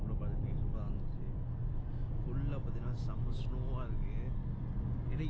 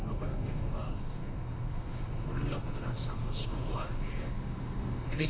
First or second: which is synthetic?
second